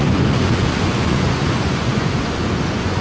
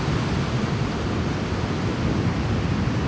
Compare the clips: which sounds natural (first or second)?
second